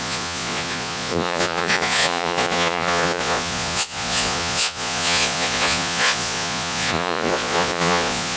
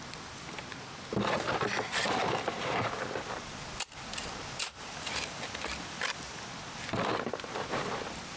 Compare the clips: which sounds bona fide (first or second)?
second